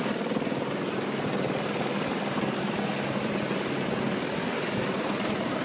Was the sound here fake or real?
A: real